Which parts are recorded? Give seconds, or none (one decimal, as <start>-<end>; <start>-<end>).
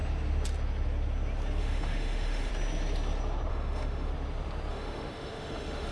0.0-1.6; 2.5-3.5; 4.1-4.7